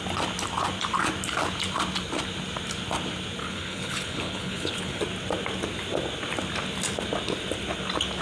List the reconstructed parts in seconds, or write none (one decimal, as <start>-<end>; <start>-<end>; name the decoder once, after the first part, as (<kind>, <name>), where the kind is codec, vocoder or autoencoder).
3.4-5.0 (codec, HILCodec)